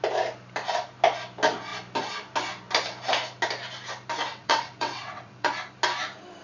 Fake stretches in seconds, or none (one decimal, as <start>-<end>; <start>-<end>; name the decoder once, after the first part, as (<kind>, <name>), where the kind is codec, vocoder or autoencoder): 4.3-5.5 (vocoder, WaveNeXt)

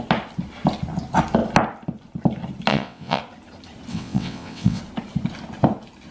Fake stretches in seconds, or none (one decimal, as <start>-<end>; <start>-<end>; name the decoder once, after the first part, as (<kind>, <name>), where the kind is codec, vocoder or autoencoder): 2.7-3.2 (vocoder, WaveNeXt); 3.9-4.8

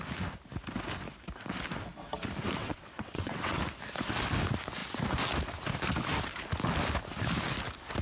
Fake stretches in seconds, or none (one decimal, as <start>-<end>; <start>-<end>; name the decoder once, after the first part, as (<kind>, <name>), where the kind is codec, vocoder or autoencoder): 2.6-3.6 (vocoder, WaveNeXt)

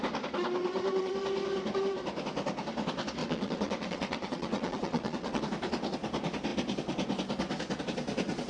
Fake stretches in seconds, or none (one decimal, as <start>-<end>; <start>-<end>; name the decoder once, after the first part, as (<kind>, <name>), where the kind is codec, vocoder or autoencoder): 0.6-1.1 (vocoder, WaveNeXt); 3.2-5.4

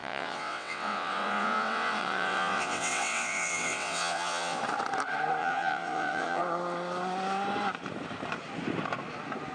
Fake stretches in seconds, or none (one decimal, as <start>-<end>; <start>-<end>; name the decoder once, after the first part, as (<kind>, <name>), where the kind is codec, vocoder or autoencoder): 0.0-4.6 (vocoder, WaveNeXt); 5.4-6.4